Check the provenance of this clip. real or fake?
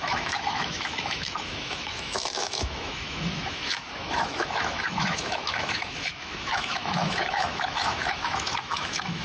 fake